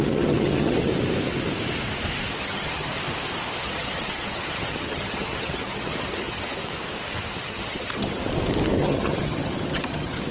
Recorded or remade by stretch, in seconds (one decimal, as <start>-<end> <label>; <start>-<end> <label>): 0.0-0.9 remade; 0.9-2.4 recorded; 2.4-2.9 remade; 2.9-3.6 recorded; 3.6-6.6 remade; 6.6-7.4 recorded; 7.4-8.2 remade; 8.2-8.8 recorded; 8.8-10.3 remade